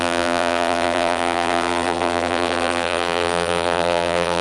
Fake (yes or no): yes